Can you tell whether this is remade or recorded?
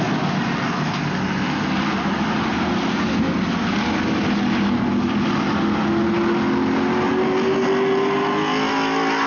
recorded